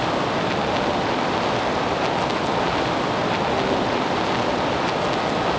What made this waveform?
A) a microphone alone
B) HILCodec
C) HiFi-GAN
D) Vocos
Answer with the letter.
A